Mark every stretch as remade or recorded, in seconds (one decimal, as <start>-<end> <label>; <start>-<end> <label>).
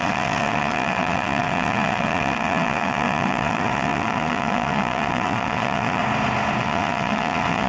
0.0-6.0 remade; 6.0-6.6 recorded; 6.6-7.7 remade